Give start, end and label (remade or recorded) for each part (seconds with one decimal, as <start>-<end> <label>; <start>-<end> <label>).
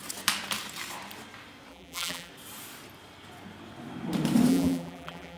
0.0-1.7 recorded; 1.7-2.3 remade; 2.3-4.5 recorded; 4.5-5.4 remade